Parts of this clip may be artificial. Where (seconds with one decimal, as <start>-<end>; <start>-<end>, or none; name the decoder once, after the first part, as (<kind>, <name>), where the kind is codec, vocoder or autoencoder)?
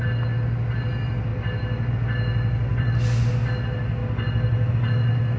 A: 2.7-3.3 (vocoder, BigVGAN v2); 4.0-4.7